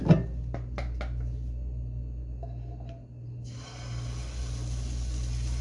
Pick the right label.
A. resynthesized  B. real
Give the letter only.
B